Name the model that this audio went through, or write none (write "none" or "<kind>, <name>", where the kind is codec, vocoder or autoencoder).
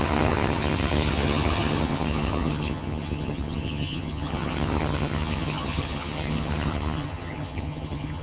vocoder, HiFi-GAN